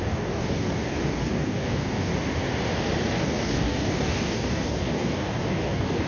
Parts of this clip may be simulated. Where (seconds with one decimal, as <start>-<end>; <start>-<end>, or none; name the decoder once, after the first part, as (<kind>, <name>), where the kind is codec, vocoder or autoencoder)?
0.0-2.1 (codec, DAC); 3.1-6.1